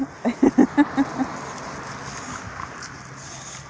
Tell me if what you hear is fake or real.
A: real